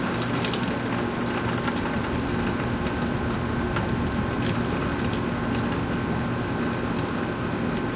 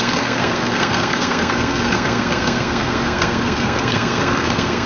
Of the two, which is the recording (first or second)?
first